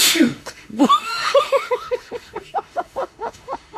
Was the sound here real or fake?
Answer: fake